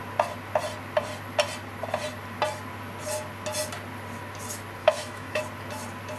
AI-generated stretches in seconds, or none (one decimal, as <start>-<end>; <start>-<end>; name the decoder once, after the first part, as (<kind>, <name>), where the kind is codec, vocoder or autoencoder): 4.8-5.4 (autoencoder, DAC-VAE)